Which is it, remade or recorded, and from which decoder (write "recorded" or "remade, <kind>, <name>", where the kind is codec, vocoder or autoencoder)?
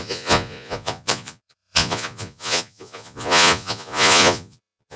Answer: remade, vocoder, Vocos